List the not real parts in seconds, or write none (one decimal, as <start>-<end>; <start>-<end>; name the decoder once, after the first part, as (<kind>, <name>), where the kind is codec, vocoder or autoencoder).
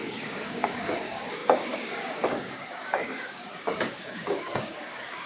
0.0-5.3 (codec, DAC)